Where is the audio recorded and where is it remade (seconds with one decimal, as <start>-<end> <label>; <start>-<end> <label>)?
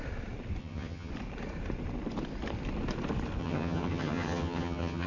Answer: 0.0-0.6 recorded; 0.6-1.1 remade; 1.1-3.4 recorded; 3.4-5.1 remade